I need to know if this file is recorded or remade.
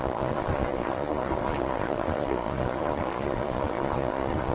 remade